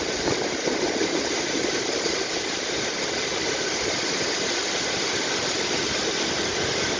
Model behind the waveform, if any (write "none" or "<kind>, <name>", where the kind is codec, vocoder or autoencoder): none